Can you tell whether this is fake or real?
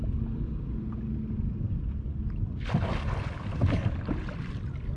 real